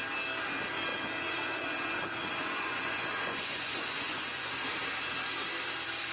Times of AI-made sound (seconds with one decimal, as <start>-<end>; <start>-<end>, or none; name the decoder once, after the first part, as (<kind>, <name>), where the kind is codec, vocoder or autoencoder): 0.9-4.5 (vocoder, Vocos)